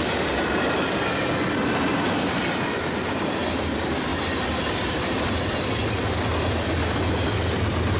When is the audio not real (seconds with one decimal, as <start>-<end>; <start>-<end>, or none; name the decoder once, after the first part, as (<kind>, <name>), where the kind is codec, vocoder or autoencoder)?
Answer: none